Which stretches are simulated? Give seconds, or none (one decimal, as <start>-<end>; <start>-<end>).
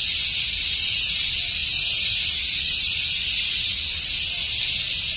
none